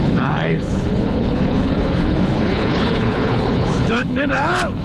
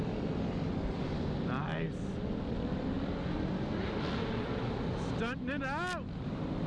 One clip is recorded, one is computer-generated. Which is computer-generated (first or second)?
first